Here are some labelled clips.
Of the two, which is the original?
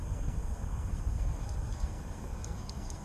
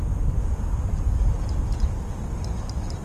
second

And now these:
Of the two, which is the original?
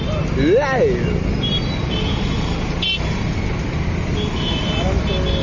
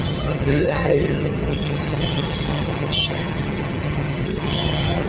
first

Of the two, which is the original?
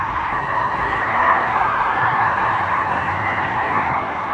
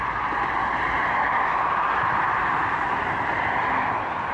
second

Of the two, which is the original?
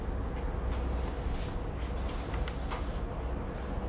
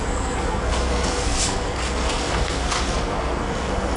first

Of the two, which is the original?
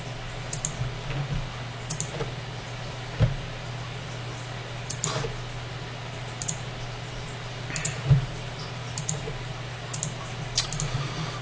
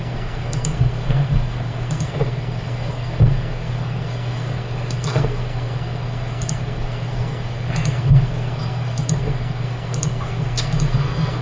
first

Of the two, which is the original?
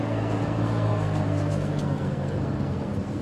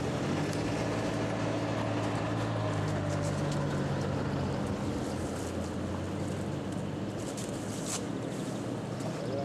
second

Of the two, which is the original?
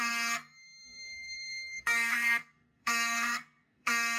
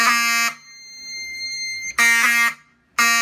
second